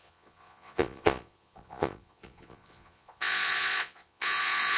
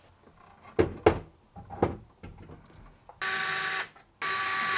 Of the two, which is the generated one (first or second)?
first